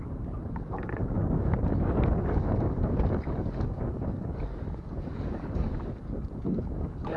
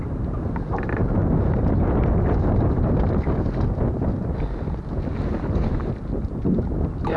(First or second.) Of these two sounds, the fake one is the first